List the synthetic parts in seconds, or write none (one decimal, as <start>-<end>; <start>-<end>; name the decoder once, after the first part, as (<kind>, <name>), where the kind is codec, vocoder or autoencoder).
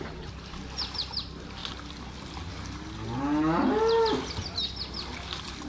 none